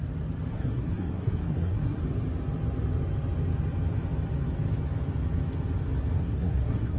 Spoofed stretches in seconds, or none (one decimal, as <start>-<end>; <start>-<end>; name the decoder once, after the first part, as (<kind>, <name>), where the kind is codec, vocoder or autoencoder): 0.5-2.0 (codec, SNAC); 6.2-7.0